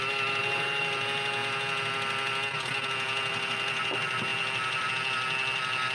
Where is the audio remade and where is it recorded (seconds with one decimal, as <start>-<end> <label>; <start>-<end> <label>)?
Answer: 0.0-5.9 recorded